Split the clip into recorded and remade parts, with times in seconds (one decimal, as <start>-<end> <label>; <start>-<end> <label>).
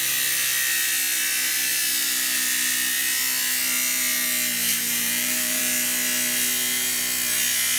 0.0-4.7 recorded; 4.7-5.6 remade; 5.6-7.8 recorded